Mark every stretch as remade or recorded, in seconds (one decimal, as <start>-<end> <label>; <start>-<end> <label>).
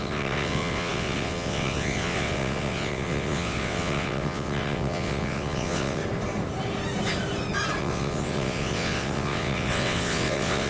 0.0-6.0 remade; 6.0-7.8 recorded; 7.8-10.7 remade